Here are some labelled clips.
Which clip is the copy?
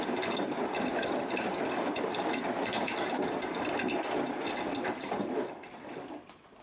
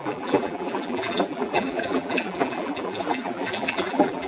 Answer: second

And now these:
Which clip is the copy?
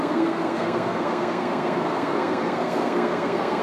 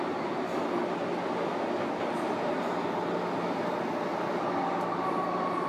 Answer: first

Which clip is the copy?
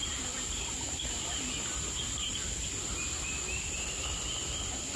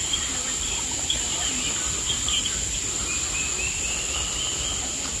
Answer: first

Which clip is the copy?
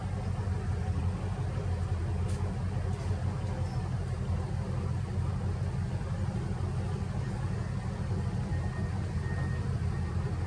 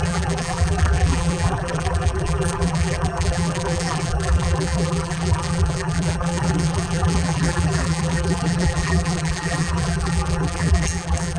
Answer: second